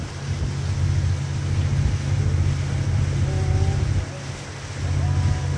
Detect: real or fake real